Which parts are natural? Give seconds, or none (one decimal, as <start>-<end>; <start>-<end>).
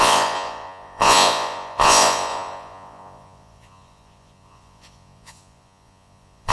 none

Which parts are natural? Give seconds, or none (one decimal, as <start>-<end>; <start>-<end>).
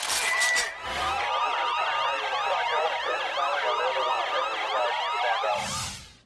0.0-6.3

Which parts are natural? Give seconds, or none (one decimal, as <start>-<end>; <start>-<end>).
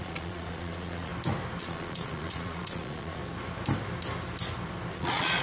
1.1-1.6; 3.2-4.9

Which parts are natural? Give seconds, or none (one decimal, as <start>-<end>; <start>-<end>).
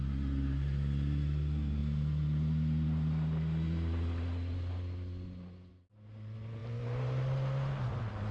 0.0-8.3